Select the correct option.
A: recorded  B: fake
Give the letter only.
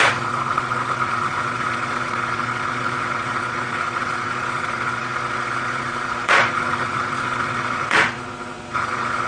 B